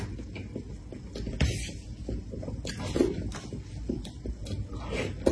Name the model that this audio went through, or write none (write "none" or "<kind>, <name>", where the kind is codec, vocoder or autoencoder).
none